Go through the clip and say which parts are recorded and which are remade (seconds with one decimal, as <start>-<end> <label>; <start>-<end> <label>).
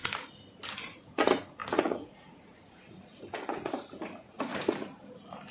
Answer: 0.0-0.8 recorded; 0.8-4.5 remade; 4.5-5.5 recorded